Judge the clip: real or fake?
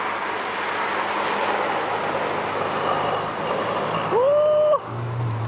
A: real